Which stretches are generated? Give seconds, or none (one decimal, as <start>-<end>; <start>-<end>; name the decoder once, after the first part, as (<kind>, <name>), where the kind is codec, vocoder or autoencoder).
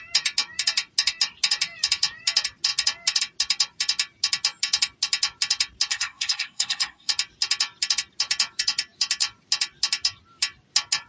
5.9-7.1 (codec, SNAC)